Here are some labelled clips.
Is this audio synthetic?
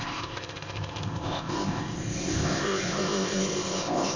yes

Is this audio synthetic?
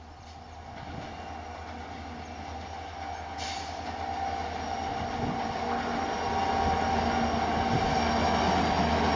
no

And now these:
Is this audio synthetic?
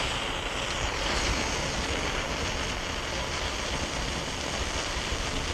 no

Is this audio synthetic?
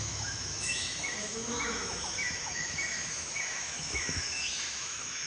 yes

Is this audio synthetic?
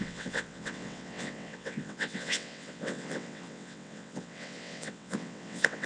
yes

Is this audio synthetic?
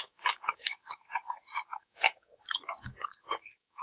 yes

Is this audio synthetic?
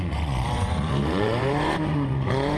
yes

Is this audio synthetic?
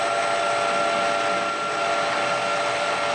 no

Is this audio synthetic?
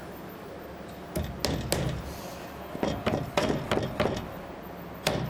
no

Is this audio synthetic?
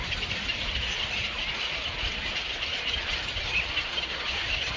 no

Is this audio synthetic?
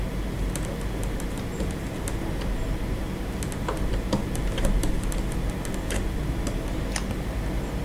no